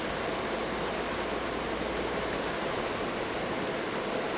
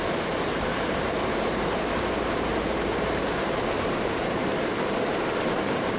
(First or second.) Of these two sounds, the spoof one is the second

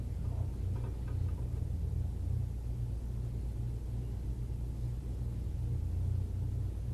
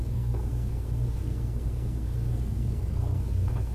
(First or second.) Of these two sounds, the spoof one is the second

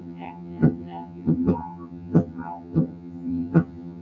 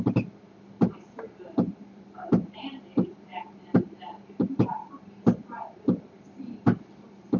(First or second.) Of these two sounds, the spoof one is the first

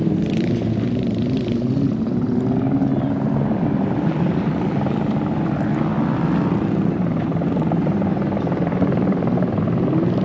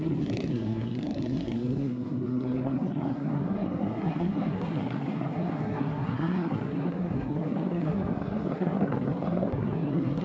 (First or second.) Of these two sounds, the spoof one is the second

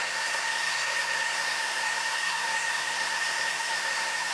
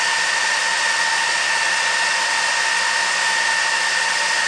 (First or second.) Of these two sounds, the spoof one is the first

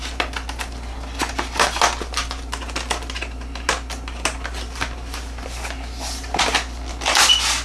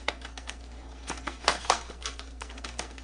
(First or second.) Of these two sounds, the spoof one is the second